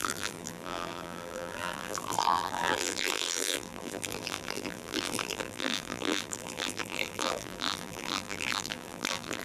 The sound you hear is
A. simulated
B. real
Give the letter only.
A